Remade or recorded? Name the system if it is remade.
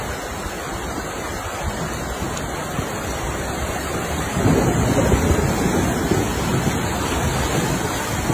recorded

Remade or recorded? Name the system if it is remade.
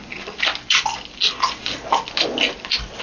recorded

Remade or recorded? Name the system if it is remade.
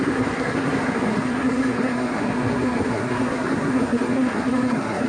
remade, codec, SNAC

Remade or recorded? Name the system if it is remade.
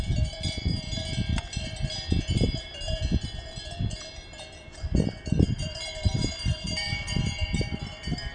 remade, vocoder, BigVGAN v2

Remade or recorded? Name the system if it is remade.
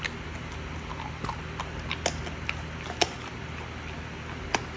recorded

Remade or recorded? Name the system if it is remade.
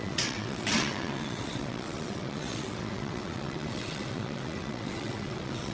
remade, vocoder, WaveNeXt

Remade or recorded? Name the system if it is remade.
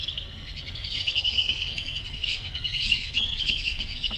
remade, codec, SNAC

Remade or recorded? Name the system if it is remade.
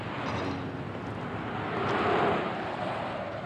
recorded